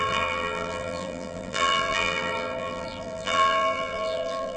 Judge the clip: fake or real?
fake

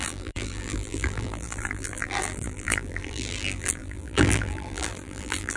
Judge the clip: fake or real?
fake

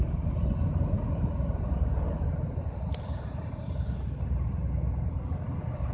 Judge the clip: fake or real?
real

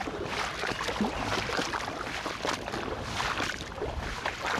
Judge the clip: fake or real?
fake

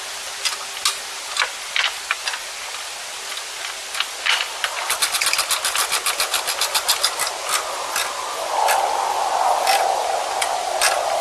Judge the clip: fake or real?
real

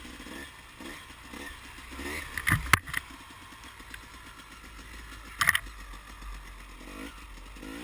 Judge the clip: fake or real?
real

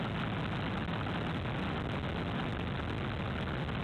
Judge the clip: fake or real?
real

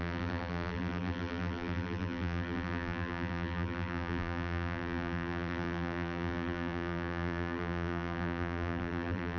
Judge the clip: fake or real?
fake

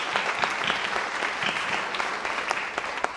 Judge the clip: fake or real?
real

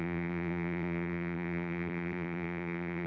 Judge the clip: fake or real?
fake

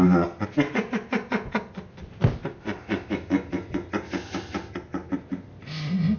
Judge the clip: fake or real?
real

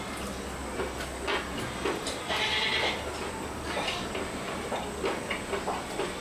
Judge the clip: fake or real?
real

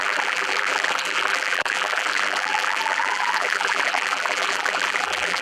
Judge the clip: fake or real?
fake